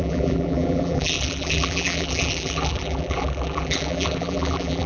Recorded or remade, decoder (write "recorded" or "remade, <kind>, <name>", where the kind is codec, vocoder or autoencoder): remade, vocoder, BigVGAN v2